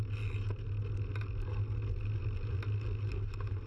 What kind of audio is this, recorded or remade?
recorded